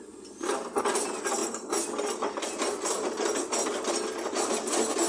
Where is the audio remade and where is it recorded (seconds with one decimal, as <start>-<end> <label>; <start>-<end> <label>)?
0.0-5.1 recorded